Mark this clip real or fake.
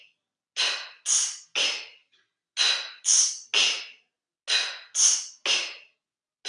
real